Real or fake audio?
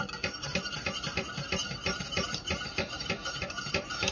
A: fake